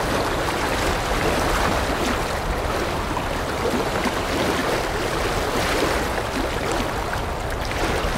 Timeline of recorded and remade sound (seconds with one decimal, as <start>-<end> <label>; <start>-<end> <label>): 0.0-8.2 recorded